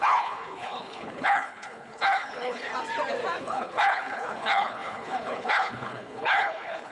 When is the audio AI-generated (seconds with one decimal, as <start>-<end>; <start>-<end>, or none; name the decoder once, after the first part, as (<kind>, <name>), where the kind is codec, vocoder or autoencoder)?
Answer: 0.0-2.7 (codec, HILCodec); 3.4-6.9